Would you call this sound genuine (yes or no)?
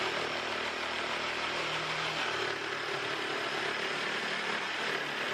yes